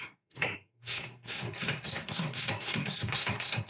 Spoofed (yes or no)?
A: yes